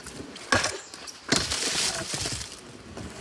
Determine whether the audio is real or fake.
real